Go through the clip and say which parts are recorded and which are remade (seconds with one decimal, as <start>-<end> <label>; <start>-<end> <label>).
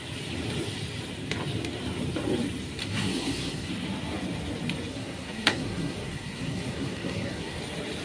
0.0-2.8 recorded; 2.8-3.7 remade; 3.7-4.9 recorded; 4.9-7.6 remade; 7.6-8.0 recorded